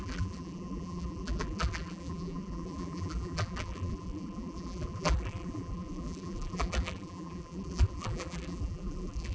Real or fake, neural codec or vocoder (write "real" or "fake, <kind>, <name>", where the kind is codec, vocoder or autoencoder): fake, vocoder, BigVGAN v2